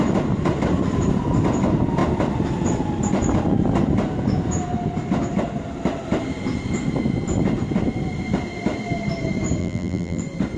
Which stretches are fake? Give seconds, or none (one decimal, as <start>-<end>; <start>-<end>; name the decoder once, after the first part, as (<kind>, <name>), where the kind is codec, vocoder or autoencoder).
9.6-10.2 (vocoder, BigVGAN v2)